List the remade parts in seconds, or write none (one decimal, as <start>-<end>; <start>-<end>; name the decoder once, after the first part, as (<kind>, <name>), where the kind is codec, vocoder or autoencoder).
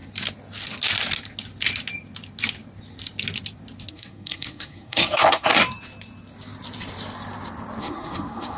3.9-5.5 (codec, SNAC); 7.8-8.6